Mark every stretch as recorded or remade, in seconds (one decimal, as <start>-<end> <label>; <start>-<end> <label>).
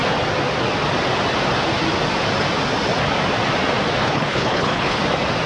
0.0-4.0 recorded; 4.0-5.0 remade; 5.0-5.5 recorded